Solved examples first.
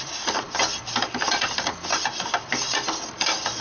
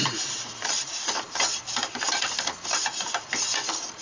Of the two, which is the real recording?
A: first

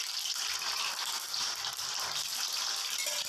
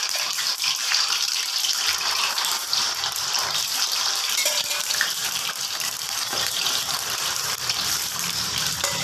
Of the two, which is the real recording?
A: first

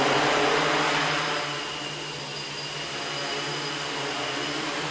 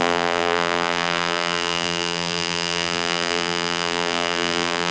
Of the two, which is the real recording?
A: first